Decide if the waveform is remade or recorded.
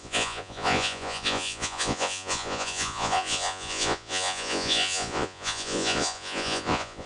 remade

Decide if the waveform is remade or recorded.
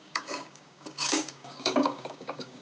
remade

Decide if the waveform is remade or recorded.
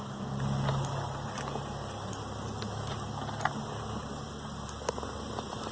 recorded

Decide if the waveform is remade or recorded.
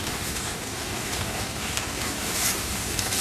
remade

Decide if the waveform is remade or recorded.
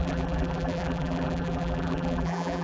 remade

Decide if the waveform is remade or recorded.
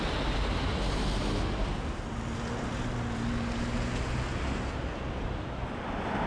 recorded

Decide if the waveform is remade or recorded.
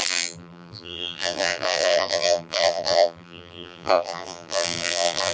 remade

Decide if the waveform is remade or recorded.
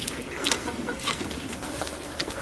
remade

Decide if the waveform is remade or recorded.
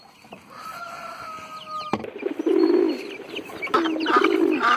recorded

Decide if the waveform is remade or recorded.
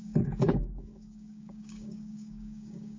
remade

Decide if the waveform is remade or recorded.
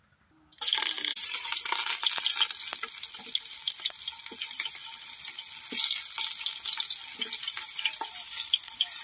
recorded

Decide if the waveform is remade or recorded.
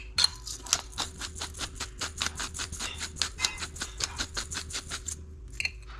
recorded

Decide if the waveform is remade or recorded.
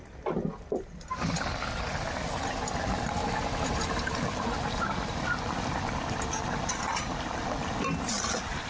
recorded